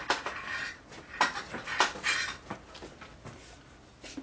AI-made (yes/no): no